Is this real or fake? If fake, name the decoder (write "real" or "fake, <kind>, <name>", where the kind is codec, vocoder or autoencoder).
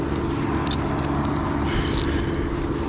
real